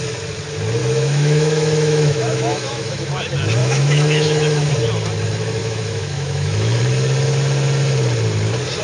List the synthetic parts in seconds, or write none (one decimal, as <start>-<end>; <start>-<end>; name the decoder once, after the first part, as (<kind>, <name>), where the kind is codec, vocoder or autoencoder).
0.8-3.1 (autoencoder, DAC-VAE); 3.6-4.7; 5.6-6.8